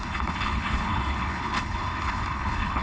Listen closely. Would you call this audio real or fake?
fake